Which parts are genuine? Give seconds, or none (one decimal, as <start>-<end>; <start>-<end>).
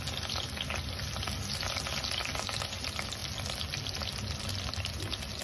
0.0-5.4